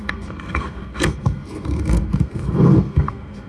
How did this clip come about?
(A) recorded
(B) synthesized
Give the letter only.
B